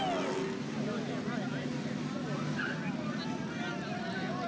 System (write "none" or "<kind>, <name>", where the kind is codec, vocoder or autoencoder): none